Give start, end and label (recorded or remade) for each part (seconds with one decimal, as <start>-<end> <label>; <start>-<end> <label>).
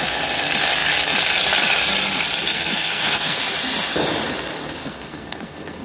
0.0-2.5 recorded; 2.5-3.4 remade; 3.4-4.8 recorded; 4.8-5.8 remade